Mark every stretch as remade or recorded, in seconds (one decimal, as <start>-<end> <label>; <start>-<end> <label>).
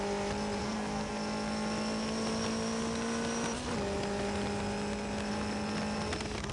0.0-0.6 recorded; 0.6-1.1 remade; 1.1-6.5 recorded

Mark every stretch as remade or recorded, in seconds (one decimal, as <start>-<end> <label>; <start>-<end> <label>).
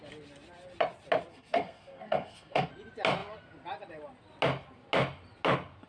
0.0-1.3 recorded; 1.3-2.7 remade; 2.7-5.9 recorded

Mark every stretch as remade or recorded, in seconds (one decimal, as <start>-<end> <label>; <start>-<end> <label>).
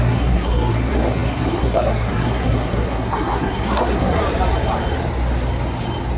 0.0-4.2 remade; 4.2-6.2 recorded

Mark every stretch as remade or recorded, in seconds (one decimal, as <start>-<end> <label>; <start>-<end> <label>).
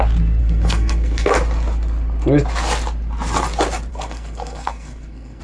0.0-0.4 recorded; 0.4-1.3 remade; 1.3-3.9 recorded; 3.9-5.4 remade